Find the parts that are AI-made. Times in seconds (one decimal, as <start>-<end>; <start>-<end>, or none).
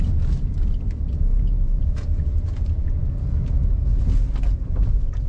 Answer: 1.3-4.0